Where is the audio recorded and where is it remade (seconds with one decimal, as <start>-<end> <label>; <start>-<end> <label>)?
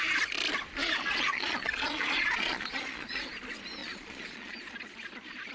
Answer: 0.0-0.8 recorded; 0.8-3.2 remade; 3.2-3.8 recorded; 3.8-4.6 remade; 4.6-5.5 recorded